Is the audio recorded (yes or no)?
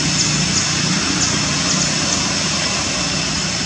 yes